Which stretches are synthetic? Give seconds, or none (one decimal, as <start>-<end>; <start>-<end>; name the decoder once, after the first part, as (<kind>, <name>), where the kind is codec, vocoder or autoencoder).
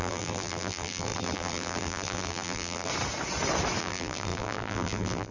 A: 0.0-2.9 (vocoder, BigVGAN v2); 3.8-5.3